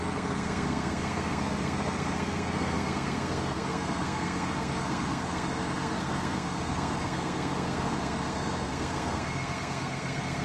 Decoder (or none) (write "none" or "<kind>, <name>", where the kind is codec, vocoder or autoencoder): codec, SNAC